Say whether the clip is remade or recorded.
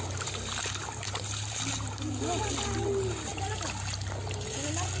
recorded